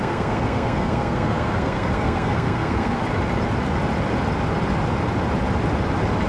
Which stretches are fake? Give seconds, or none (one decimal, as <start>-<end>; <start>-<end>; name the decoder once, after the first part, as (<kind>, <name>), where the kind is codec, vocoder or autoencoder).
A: 0.0-3.0 (codec, SNAC)